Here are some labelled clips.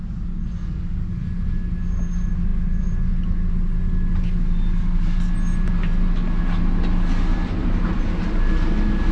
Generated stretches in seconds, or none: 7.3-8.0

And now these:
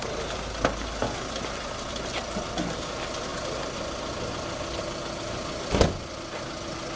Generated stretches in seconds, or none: none

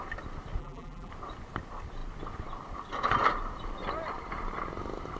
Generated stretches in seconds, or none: 0.6-1.1

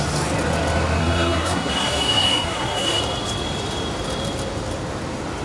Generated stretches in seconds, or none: 1.0-3.0